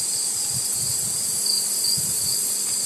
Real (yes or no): yes